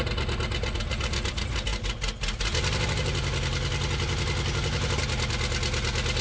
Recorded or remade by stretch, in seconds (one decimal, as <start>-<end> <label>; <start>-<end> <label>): 0.0-6.2 recorded